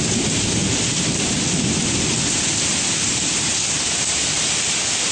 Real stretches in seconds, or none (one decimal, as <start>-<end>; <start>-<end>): none